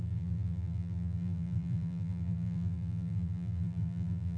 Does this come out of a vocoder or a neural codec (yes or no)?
yes